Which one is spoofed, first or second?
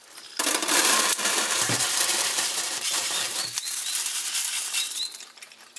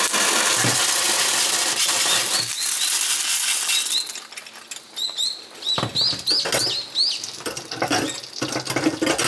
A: first